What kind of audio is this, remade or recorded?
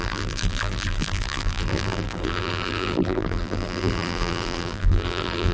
remade